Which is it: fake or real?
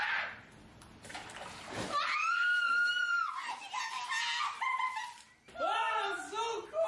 real